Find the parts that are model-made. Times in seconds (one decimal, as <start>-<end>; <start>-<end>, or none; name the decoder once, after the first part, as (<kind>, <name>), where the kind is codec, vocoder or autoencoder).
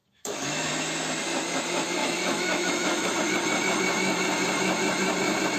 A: 0.0-0.7 (autoencoder, DAC-VAE); 2.0-3.1